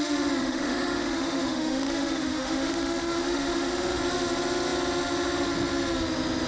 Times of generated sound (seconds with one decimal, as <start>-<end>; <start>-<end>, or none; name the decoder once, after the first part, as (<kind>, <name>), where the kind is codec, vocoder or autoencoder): 0.4-4.0 (autoencoder, DAC-VAE)